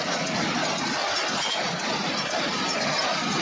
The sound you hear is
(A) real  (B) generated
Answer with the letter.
B